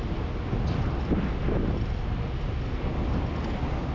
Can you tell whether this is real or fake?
real